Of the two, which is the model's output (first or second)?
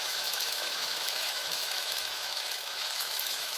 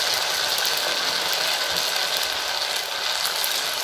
first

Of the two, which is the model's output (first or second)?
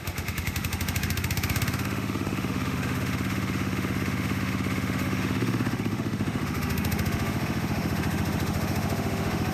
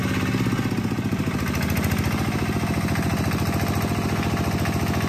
first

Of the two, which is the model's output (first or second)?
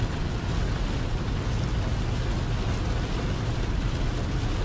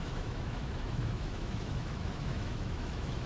second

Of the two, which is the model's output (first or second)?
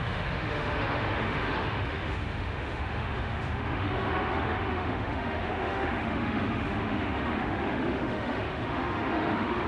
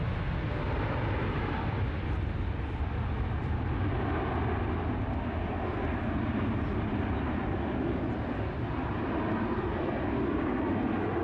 first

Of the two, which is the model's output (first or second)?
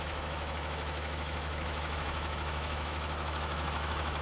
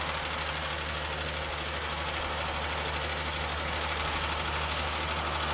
first